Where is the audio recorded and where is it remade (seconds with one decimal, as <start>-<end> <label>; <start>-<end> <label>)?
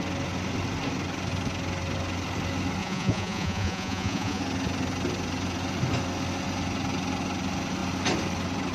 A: 0.0-2.8 recorded; 2.8-4.4 remade; 4.4-8.7 recorded